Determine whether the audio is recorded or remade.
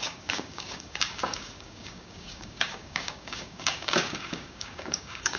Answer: remade